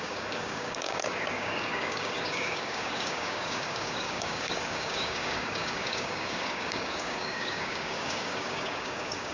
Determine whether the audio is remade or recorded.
remade